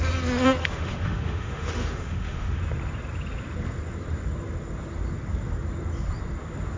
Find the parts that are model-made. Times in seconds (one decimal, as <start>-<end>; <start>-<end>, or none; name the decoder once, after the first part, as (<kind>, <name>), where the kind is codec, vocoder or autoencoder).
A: 0.6-2.6 (autoencoder, DAC-VAE)